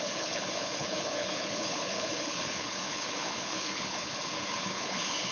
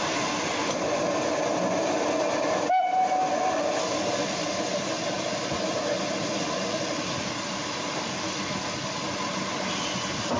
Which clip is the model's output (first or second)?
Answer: first